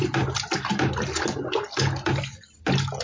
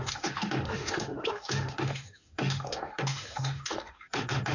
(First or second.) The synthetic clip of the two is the second